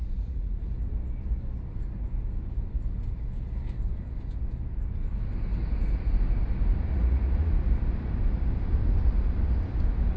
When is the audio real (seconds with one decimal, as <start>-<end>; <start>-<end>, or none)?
0.6-6.9; 7.5-10.2